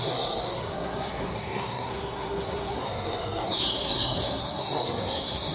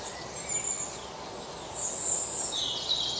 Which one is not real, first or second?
first